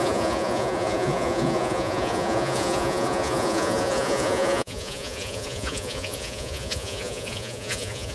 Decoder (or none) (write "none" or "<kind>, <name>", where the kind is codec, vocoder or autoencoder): vocoder, Vocos